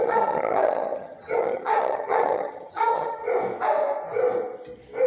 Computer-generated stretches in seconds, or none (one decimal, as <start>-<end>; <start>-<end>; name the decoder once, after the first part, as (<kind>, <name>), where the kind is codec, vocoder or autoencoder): 0.0-3.2 (vocoder, HiFi-GAN)